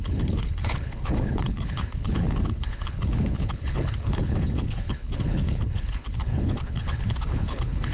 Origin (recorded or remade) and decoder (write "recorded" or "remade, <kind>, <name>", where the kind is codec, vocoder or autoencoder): remade, codec, HILCodec